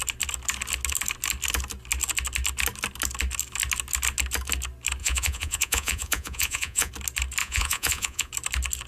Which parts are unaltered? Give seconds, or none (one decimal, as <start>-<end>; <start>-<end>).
0.0-5.0; 6.9-7.4; 8.3-8.9